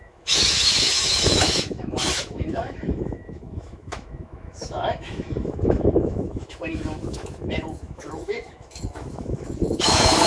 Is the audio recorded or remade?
remade